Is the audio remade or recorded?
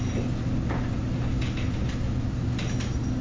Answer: recorded